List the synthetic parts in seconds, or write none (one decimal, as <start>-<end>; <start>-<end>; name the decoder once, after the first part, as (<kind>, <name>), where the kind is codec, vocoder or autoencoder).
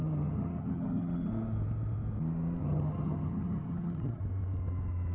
0.0-1.3 (vocoder, HiFi-GAN); 2.6-4.2